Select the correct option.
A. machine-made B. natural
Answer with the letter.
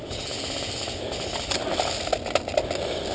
B